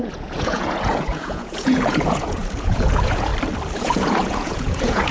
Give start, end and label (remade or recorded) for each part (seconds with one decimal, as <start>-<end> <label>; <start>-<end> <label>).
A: 0.0-3.3 remade; 3.3-3.8 recorded; 3.8-5.1 remade